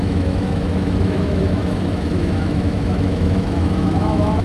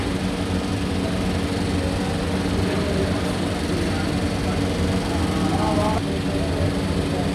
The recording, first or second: second